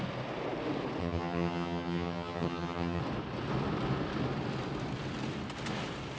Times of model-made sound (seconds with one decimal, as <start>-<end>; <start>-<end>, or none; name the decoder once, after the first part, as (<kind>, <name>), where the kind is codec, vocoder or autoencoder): 1.0-3.0 (vocoder, HiFi-GAN)